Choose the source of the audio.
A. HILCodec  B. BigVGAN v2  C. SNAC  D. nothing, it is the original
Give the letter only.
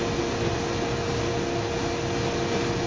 D